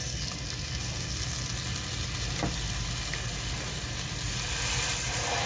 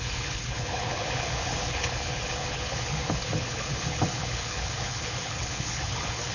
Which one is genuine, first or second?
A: first